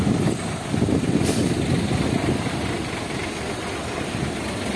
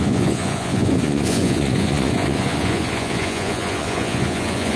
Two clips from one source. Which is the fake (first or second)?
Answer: second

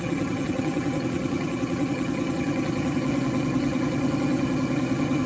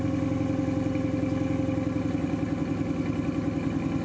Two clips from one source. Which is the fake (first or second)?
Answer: first